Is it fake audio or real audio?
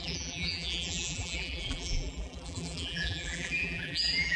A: fake